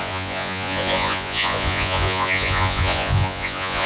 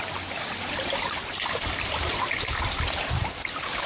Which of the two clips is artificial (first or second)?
first